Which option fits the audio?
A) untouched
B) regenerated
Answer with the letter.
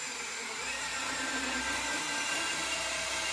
A